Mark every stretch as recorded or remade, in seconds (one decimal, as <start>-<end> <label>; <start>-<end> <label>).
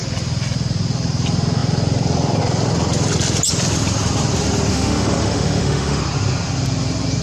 0.0-4.7 recorded; 4.7-6.0 remade; 6.0-7.2 recorded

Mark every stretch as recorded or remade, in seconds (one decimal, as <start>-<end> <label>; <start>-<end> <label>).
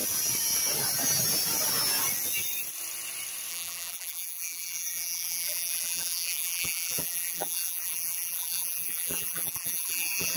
0.0-3.5 recorded; 3.5-10.4 remade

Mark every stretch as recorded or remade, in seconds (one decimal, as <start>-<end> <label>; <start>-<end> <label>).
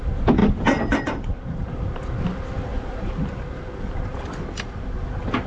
0.0-0.4 recorded; 0.4-1.9 remade; 1.9-5.5 recorded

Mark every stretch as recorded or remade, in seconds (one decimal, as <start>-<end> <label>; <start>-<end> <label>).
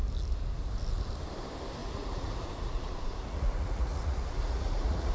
0.0-1.8 recorded; 1.8-5.1 remade